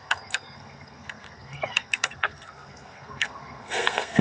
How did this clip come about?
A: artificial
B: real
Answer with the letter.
A